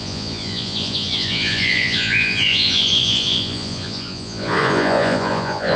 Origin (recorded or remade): remade